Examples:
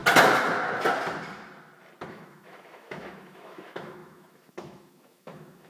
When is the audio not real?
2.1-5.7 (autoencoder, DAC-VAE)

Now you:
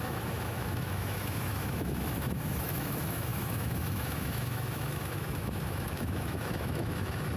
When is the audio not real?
0.0-7.4 (autoencoder, DAC-VAE)

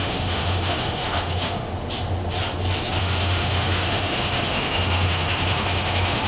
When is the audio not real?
0.0-1.7 (autoencoder, DAC-VAE); 3.0-6.3

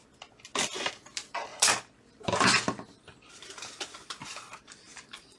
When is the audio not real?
none

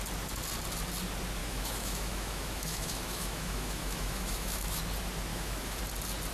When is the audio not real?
1.4-4.8 (autoencoder, DAC-VAE); 5.3-5.8

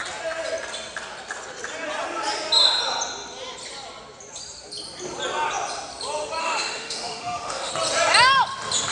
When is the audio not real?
6.4-7.7 (autoencoder, DAC-VAE)